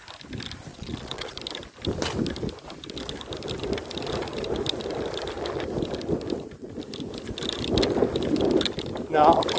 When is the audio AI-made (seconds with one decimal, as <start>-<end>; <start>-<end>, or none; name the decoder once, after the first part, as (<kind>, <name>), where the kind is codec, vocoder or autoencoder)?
0.7-1.4 (vocoder, Vocos)